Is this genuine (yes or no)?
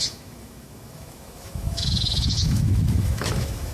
no